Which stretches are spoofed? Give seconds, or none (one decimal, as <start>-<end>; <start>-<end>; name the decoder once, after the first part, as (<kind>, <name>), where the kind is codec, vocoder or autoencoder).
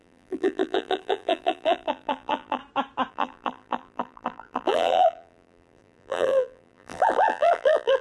0.0-2.6 (vocoder, BigVGAN v2); 3.1-8.0